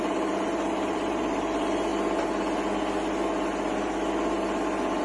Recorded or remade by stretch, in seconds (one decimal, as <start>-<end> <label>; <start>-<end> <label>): 0.0-1.9 remade; 1.9-5.0 recorded

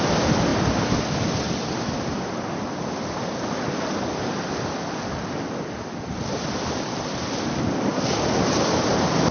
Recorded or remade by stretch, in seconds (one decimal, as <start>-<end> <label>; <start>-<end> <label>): 0.0-0.5 recorded; 0.5-2.2 remade; 2.2-9.3 recorded

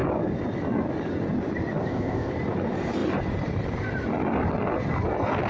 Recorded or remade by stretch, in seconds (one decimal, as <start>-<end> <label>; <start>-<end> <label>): 0.0-1.8 recorded; 1.8-2.3 remade; 2.3-5.5 recorded

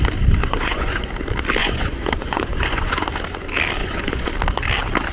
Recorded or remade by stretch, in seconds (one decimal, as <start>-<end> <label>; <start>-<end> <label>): 0.0-0.4 recorded; 0.4-1.1 remade; 1.1-1.6 recorded; 1.6-2.9 remade; 2.9-3.8 recorded; 3.8-4.3 remade; 4.3-5.1 recorded

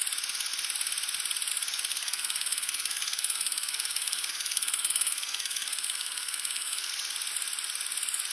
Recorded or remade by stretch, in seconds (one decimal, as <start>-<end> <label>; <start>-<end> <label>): 0.0-1.9 recorded; 1.9-6.9 remade; 6.9-8.3 recorded

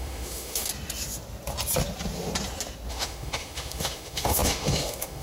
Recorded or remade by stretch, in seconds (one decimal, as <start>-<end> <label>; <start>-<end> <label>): 0.0-0.7 remade; 0.7-2.9 recorded; 2.9-5.2 remade

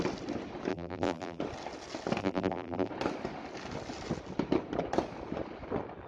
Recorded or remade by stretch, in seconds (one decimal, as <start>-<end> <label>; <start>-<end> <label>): 0.0-0.7 recorded; 0.7-1.4 remade; 1.4-2.2 recorded; 2.2-2.9 remade; 2.9-6.1 recorded

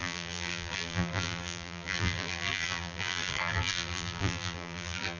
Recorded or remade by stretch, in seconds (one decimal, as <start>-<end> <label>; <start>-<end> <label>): 0.0-5.2 remade